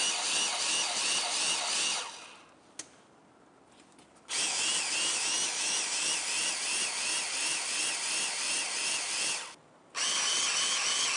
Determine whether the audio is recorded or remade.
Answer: recorded